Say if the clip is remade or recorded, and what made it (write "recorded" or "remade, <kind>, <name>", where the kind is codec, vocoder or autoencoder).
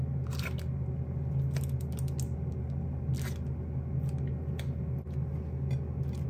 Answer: recorded